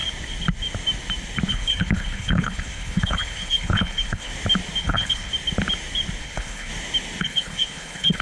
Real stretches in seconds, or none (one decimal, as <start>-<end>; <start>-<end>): 0.0-1.5; 4.3-4.8; 5.3-6.2; 6.7-7.2